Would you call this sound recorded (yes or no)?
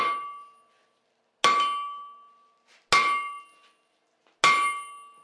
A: yes